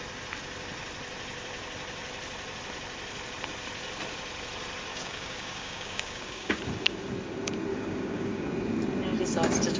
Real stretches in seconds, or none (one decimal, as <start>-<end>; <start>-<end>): 0.0-4.9; 6.6-7.7; 8.5-9.8